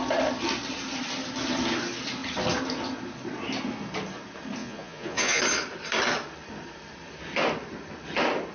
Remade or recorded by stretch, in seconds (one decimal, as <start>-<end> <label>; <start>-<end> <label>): 0.0-4.6 recorded; 4.6-5.4 remade; 5.4-8.5 recorded